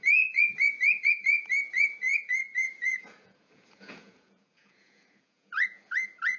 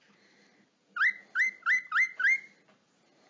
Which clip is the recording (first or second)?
second